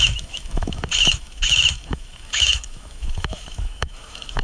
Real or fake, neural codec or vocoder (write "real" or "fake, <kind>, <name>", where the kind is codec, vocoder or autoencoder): fake, autoencoder, DAC-VAE